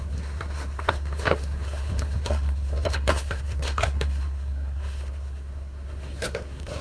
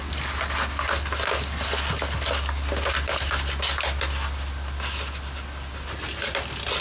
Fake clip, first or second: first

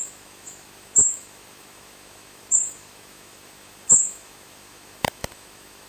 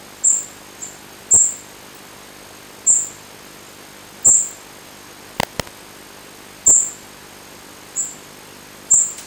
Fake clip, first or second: first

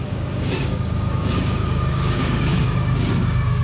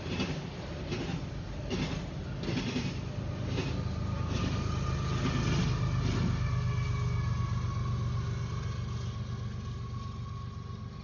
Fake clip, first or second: first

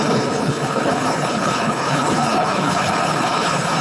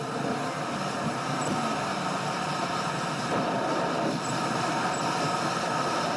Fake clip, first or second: first